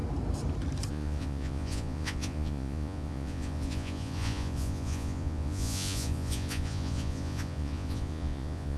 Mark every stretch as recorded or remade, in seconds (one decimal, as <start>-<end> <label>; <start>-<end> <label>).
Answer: 0.0-0.9 recorded; 0.9-8.8 remade